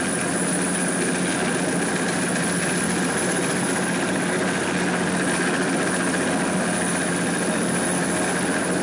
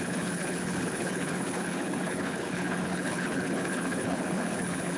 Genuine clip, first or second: first